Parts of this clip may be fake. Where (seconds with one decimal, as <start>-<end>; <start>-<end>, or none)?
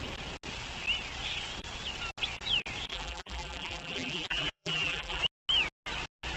2.9-5.2